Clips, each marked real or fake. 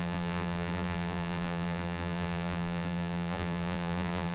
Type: fake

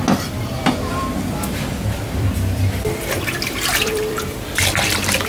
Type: fake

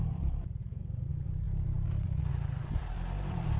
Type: fake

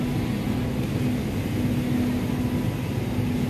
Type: real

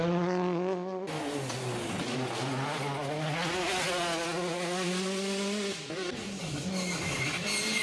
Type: real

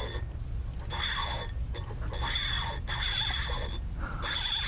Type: real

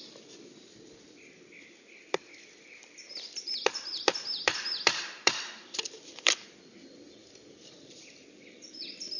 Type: fake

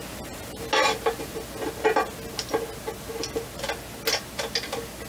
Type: real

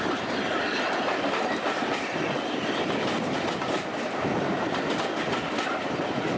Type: fake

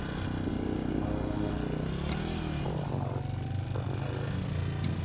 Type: real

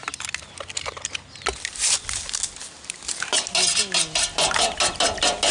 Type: real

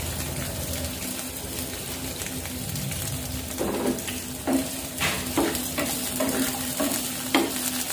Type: real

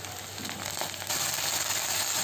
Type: real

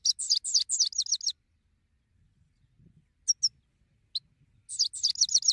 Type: real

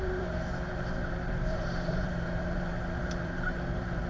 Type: fake